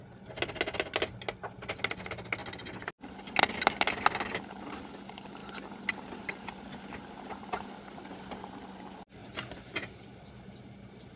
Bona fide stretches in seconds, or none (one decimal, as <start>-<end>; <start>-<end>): 0.0-5.4; 6.3-9.2; 10.3-11.2